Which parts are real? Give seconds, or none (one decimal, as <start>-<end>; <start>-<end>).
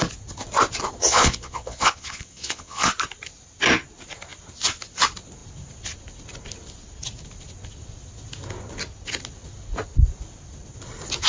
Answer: 0.0-1.0; 2.9-11.3